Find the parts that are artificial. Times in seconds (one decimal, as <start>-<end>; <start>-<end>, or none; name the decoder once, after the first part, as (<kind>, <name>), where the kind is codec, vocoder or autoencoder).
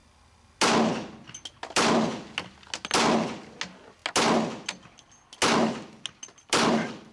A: none